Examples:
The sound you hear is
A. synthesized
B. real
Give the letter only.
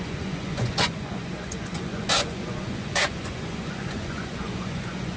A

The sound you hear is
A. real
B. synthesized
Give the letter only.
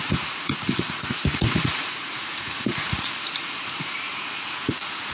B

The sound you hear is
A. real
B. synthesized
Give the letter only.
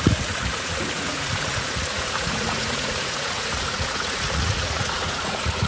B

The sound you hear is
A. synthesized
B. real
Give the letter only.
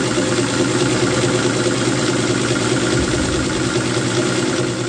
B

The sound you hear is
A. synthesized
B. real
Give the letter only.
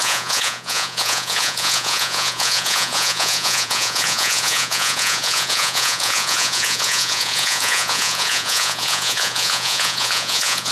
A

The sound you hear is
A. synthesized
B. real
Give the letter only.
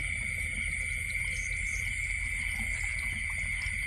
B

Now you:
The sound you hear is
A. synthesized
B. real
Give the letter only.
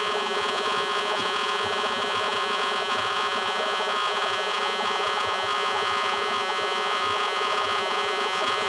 A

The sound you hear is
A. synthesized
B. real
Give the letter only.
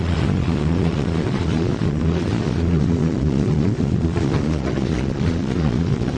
A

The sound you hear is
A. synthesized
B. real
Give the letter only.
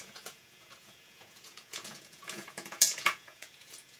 A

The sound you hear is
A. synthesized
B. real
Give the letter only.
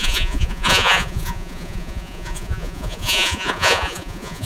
A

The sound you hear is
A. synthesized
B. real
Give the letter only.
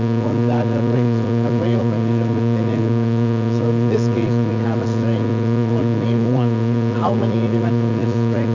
A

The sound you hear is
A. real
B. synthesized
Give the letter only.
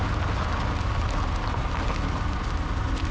A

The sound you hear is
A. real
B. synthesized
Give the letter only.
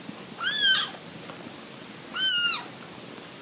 A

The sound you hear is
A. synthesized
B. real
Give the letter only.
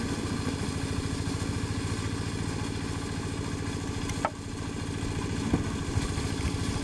B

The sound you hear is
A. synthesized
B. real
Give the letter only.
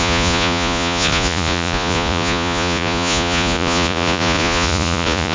A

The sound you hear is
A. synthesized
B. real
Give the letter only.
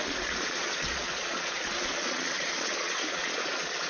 A